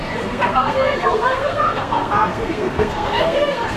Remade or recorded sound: remade